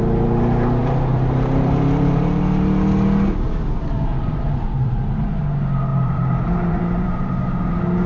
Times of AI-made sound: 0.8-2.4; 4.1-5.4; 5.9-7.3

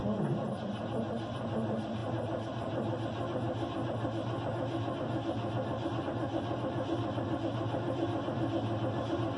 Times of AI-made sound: none

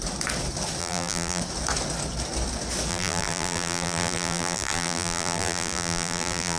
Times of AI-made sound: 0.8-1.4; 2.9-6.6

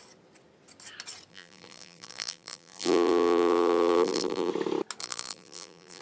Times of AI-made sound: 1.3-4.5; 5.0-6.0

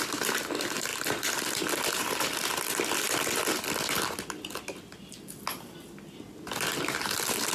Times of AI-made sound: none

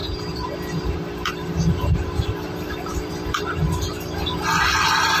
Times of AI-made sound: 0.0-3.1

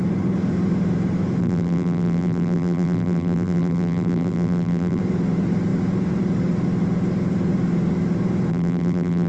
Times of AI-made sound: 1.4-5.0; 8.5-9.3